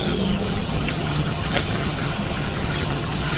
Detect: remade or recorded remade